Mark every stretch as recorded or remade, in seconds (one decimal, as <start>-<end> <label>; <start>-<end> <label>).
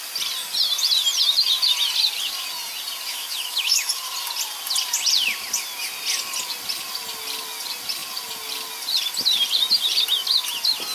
0.0-3.1 recorded; 3.1-3.9 remade; 3.9-10.9 recorded